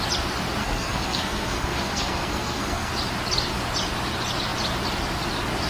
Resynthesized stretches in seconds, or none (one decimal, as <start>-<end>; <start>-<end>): 0.6-2.9